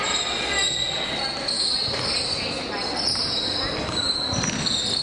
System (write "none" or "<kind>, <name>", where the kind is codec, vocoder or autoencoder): none